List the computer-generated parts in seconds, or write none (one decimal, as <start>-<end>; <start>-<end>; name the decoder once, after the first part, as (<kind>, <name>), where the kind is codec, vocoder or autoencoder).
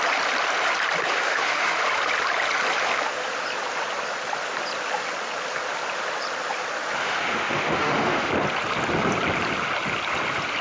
1.1-1.8 (autoencoder, DAC-VAE); 7.0-8.3